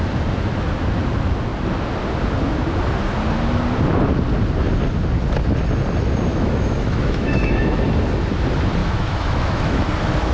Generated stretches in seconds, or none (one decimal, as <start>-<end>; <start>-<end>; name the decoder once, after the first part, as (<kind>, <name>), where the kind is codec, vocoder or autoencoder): 6.3-7.8 (autoencoder, DAC-VAE); 8.8-9.8